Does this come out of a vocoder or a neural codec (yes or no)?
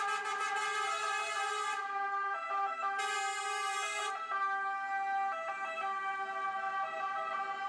no